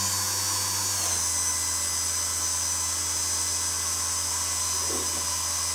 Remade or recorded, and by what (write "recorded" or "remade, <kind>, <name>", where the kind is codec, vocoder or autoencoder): recorded